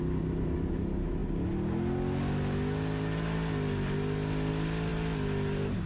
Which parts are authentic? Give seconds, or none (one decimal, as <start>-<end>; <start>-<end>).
0.0-5.9